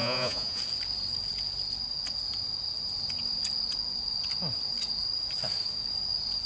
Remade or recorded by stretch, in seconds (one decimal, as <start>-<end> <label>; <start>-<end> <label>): 0.0-0.6 remade; 0.6-6.5 recorded